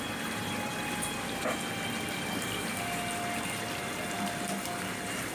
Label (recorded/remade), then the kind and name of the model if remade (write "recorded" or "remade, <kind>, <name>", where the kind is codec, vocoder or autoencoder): remade, vocoder, BigVGAN v2